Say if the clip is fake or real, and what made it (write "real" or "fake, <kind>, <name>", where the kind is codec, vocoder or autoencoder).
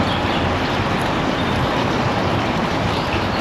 real